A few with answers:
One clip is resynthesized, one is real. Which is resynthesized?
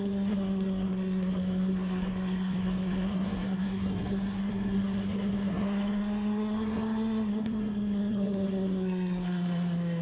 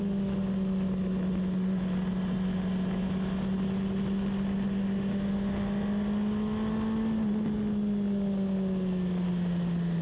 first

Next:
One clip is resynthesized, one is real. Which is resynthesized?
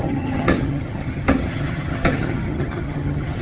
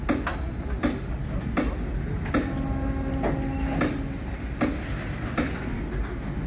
first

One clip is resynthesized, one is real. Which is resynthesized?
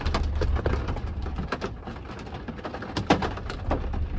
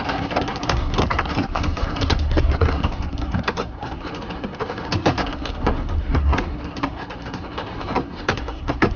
second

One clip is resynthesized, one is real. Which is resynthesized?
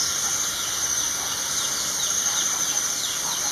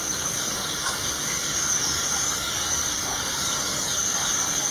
second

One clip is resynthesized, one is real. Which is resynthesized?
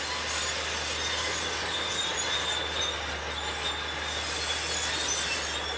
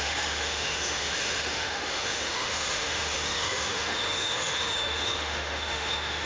second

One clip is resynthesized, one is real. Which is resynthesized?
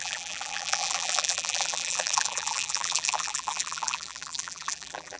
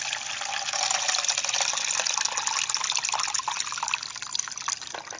first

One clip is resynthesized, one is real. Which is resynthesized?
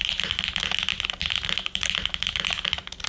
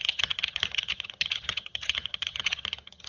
second